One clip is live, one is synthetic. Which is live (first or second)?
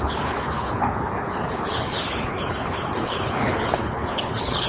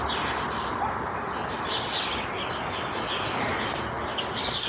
second